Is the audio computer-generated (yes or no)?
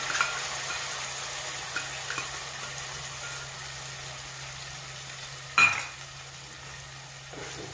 no